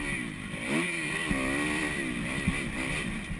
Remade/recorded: recorded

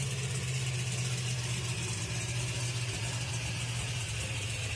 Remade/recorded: recorded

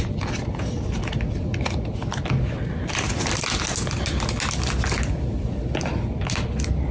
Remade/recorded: recorded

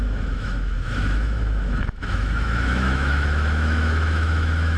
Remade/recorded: remade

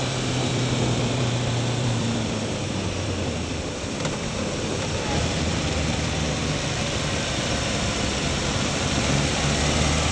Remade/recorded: remade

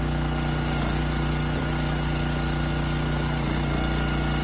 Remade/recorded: recorded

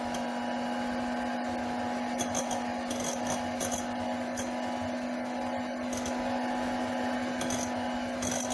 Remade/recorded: recorded